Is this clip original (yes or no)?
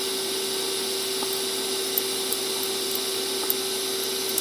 yes